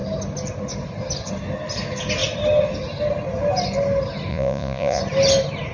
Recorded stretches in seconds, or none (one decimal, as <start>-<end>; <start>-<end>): 0.0-4.3; 5.0-5.7